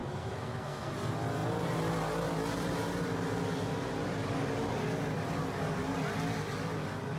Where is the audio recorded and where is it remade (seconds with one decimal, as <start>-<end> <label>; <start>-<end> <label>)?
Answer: 0.0-0.9 remade; 0.9-7.2 recorded